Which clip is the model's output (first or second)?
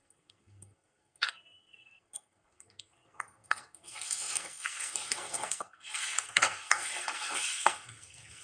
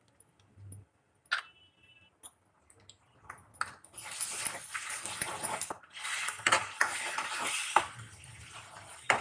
first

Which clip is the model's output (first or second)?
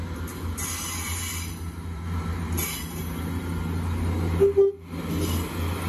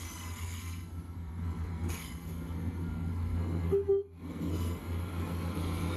second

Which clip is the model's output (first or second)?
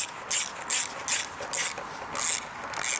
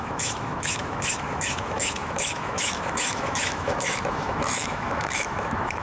second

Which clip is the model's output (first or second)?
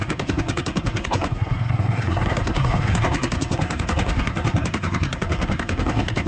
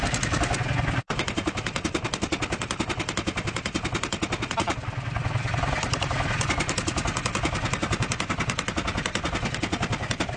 first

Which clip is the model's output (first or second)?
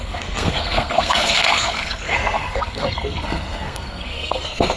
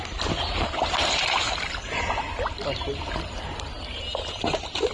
first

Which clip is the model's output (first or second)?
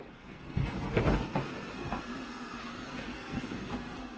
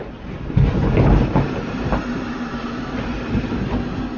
first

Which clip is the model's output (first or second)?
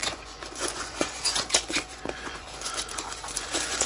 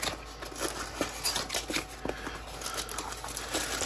first